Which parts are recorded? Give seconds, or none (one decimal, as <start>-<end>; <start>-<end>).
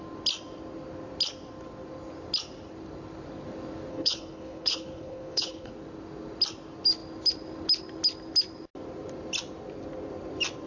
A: 0.0-3.9; 5.7-10.7